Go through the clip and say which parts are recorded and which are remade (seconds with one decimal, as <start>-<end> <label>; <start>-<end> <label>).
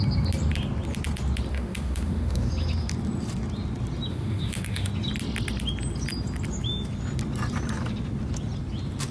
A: 0.0-1.5 recorded; 1.5-2.5 remade; 2.5-4.1 recorded; 4.1-4.9 remade; 4.9-9.1 recorded